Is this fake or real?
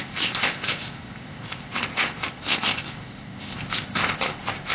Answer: fake